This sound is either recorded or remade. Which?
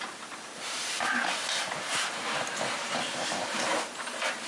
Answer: remade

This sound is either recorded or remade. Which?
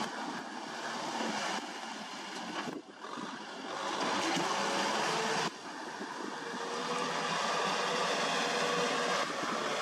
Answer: recorded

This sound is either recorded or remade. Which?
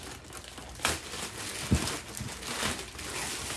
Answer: recorded